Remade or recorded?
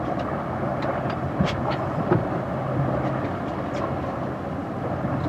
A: recorded